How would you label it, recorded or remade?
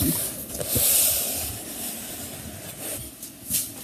recorded